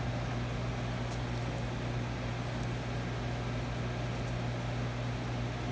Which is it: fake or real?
real